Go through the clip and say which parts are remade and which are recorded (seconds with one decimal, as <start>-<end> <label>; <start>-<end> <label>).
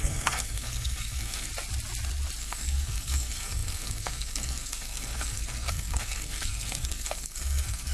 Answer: 0.0-1.5 remade; 1.5-2.4 recorded; 2.4-7.9 remade